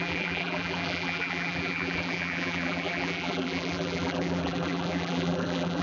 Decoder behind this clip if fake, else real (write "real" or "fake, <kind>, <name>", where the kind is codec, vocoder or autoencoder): fake, vocoder, BigVGAN v2